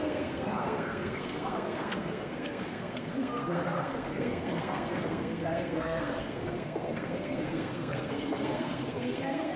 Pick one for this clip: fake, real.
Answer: fake